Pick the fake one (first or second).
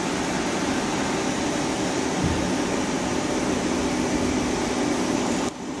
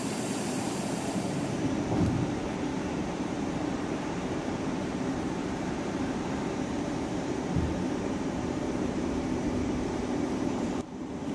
second